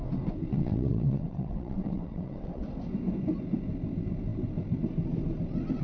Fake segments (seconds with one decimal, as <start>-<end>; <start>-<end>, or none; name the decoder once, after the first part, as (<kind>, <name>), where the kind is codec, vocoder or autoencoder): 0.5-2.6 (vocoder, WaveNeXt)